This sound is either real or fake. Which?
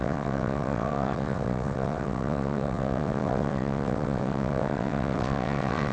fake